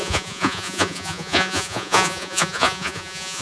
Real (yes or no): no